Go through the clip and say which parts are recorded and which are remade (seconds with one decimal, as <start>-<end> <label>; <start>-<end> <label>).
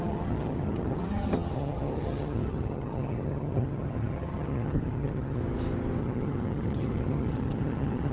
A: 0.0-5.4 remade; 5.4-6.0 recorded; 6.0-8.1 remade